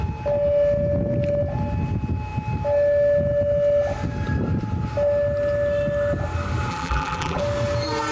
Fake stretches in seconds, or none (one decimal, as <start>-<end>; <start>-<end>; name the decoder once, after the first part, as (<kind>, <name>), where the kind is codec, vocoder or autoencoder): 6.7-7.4 (vocoder, BigVGAN v2)